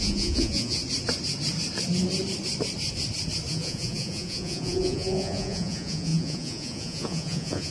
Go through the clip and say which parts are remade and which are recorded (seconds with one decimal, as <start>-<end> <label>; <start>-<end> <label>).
0.0-0.8 remade; 0.8-3.5 recorded; 3.5-7.7 remade